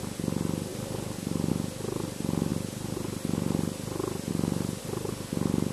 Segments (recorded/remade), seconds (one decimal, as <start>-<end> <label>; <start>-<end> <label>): 0.0-5.7 recorded